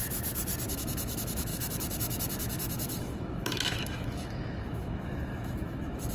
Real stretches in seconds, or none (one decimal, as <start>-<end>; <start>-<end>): 0.0-0.7